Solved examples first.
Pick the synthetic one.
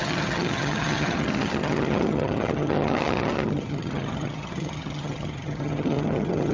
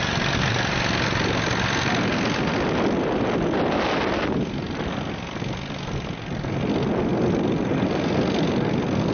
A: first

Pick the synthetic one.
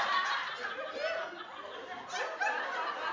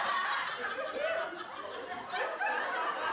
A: second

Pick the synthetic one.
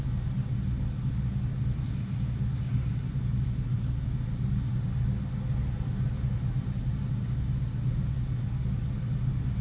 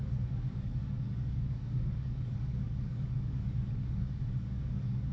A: second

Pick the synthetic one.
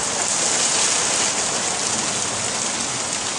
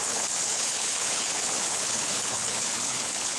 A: second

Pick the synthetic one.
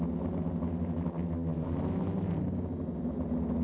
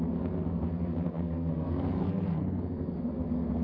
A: second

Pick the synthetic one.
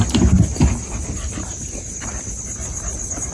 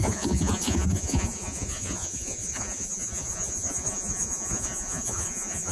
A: second